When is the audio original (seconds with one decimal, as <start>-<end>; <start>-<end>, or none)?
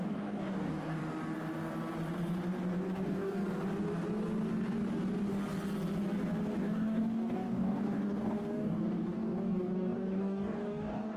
1.0-2.9; 3.4-6.6